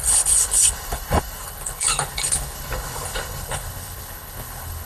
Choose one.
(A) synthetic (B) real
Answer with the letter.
A